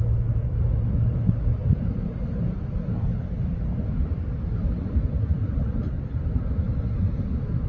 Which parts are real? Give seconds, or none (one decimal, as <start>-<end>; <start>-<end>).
0.0-7.7